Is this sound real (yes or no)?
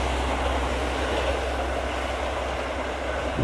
yes